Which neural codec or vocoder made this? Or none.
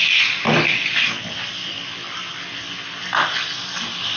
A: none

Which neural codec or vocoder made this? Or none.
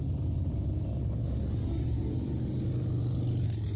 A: none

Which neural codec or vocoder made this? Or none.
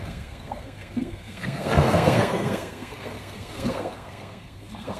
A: codec, SNAC